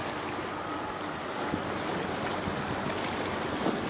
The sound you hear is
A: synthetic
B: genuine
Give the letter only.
B